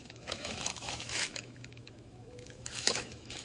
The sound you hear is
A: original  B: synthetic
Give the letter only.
B